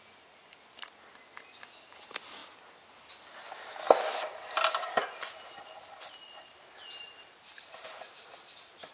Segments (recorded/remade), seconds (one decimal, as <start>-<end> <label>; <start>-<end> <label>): 0.0-8.9 recorded